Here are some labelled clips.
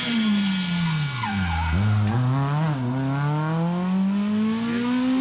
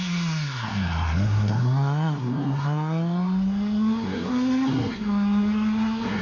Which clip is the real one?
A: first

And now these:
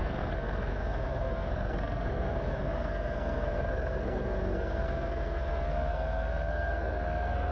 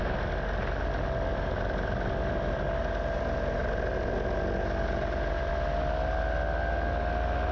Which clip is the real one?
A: second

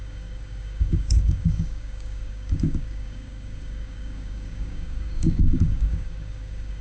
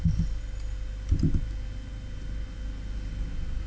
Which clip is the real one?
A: second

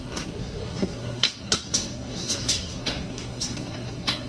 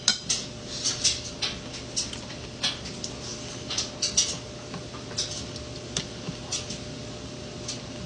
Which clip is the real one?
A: second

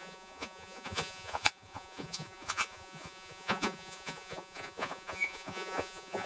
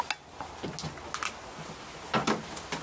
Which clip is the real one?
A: second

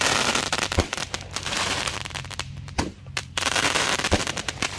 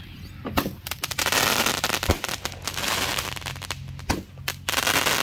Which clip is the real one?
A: second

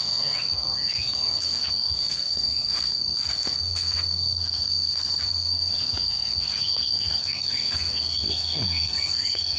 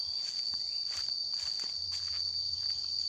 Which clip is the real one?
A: second